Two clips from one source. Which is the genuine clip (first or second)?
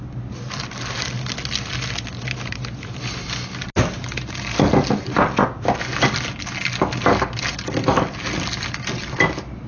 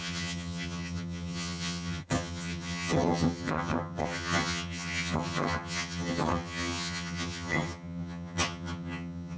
first